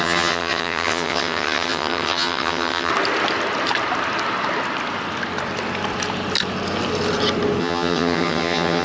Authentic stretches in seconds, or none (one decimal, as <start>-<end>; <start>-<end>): 2.9-7.6